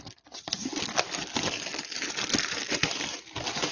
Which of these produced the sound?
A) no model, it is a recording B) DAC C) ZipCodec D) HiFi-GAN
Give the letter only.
A